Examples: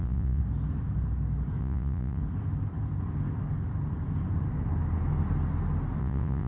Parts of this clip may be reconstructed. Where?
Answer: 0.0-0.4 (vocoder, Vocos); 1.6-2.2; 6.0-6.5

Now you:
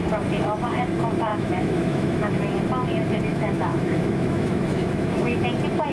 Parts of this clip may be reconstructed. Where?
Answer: 1.3-2.3 (autoencoder, DAC-VAE); 3.3-5.4

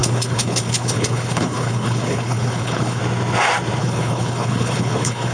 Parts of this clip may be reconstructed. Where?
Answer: 0.0-3.0 (codec, HILCodec); 3.8-5.3

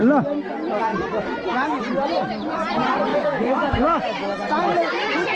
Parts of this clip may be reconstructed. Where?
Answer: 3.1-4.0 (autoencoder, DAC-VAE)

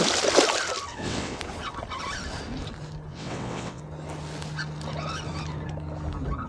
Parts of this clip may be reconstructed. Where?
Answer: 0.9-1.4 (vocoder, WaveNeXt); 3.1-3.8

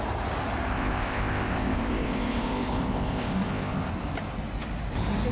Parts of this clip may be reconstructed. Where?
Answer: 0.7-3.9 (codec, ZipCodec)

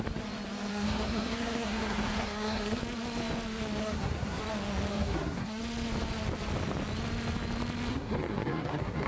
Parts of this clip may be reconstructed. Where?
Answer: 0.7-2.8 (codec, SNAC); 3.8-4.4; 4.9-5.6; 7.9-9.1

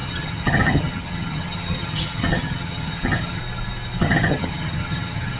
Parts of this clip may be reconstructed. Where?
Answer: 0.0-3.4 (vocoder, HiFi-GAN); 4.0-5.4